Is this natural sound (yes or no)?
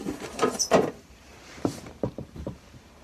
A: no